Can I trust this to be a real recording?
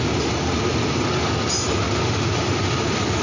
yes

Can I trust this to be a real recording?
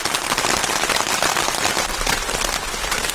no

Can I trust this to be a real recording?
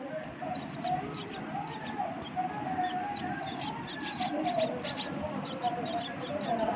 yes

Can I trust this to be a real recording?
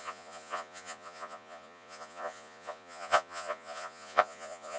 no